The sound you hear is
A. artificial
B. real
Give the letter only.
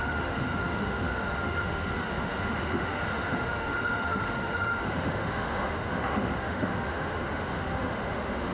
A